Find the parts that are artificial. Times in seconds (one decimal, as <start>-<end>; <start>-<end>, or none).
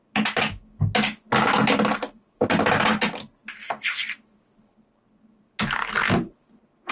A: none